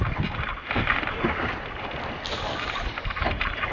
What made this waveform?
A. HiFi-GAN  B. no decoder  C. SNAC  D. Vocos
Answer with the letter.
B